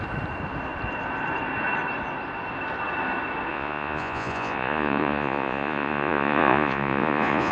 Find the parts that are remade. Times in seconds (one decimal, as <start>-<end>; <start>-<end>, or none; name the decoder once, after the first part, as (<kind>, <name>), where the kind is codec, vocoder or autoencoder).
3.5-7.5 (vocoder, Vocos)